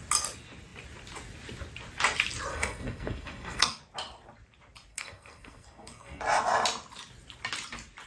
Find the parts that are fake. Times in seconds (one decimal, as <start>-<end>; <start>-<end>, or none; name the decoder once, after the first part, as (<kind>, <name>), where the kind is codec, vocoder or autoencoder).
2.5-3.8 (codec, SNAC); 4.9-6.2